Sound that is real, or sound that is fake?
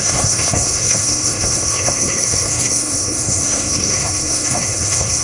fake